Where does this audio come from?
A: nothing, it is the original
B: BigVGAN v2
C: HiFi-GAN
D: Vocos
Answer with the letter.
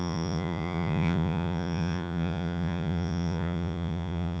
D